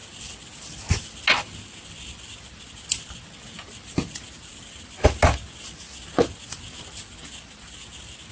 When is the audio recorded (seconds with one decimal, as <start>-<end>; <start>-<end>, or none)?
0.0-8.3